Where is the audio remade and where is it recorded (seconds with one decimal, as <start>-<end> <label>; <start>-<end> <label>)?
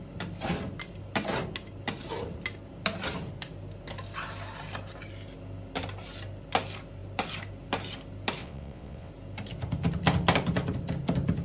0.0-8.4 recorded; 8.4-9.1 remade; 9.1-11.4 recorded